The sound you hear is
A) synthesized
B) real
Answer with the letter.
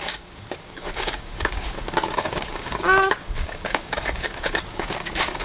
A